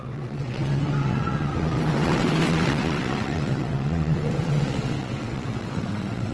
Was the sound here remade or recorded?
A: remade